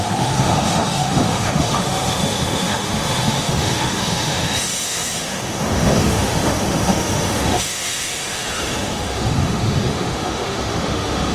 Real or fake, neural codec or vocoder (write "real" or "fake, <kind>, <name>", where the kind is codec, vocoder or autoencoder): fake, autoencoder, DAC-VAE